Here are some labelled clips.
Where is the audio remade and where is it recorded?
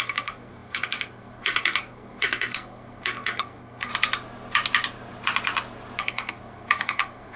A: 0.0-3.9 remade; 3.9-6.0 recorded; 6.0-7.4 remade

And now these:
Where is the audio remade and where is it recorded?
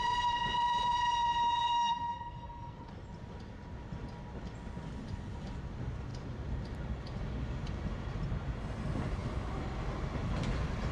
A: 0.0-1.7 recorded; 1.7-2.9 remade; 2.9-10.9 recorded